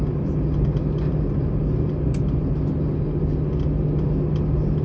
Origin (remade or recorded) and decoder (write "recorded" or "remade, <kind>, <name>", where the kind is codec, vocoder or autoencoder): recorded